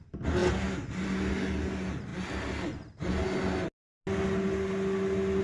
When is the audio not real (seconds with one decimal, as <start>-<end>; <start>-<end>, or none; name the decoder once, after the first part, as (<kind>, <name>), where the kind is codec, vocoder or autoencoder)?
none